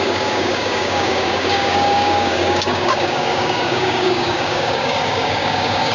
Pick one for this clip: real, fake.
fake